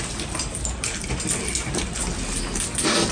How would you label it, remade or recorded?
recorded